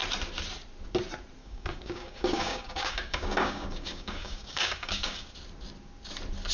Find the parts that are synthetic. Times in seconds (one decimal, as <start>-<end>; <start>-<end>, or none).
1.4-5.3